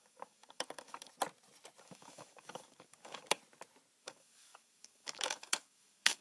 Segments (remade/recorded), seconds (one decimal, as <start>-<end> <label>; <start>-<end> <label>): 0.0-1.1 remade; 1.1-1.8 recorded; 1.8-3.4 remade; 3.4-4.0 recorded; 4.0-6.2 remade